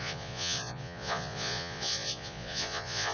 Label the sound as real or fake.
fake